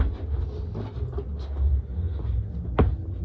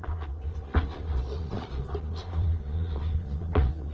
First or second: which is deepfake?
second